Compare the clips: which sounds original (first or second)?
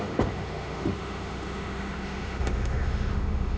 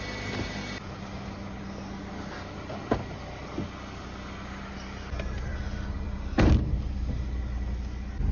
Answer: second